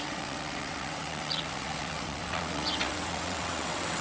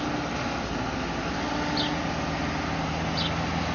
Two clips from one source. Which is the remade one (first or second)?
first